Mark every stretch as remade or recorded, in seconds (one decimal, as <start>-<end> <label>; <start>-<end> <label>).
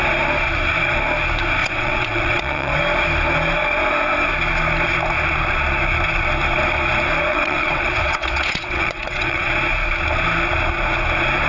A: 0.0-1.6 recorded; 1.6-2.8 remade; 2.8-7.3 recorded; 7.3-9.5 remade; 9.5-11.5 recorded